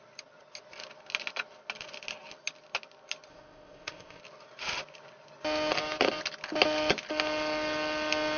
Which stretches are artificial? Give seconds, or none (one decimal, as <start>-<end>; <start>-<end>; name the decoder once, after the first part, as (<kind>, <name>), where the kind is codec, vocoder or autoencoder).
3.3-4.2 (codec, ZipCodec)